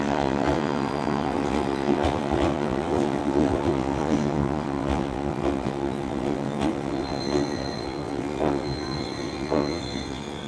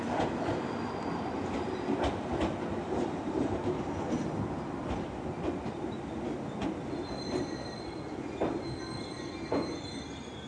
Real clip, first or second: second